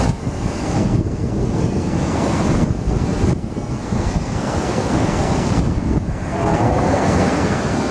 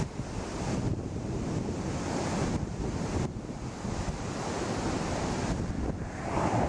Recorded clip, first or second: second